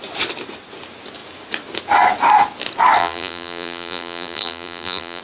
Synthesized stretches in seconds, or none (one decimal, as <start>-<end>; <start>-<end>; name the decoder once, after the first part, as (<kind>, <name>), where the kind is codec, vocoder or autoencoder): 3.0-5.2 (vocoder, BigVGAN v2)